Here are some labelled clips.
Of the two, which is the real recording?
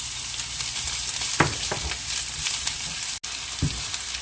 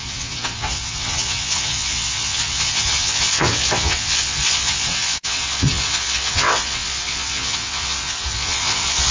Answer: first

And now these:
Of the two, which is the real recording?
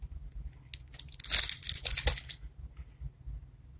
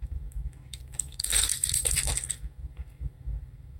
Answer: first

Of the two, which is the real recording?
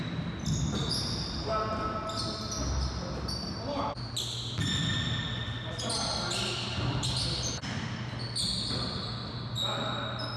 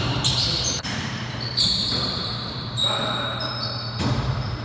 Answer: first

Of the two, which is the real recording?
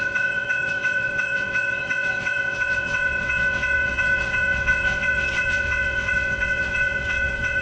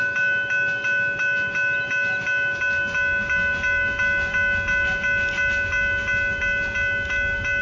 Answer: second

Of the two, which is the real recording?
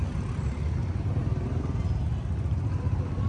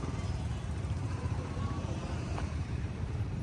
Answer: first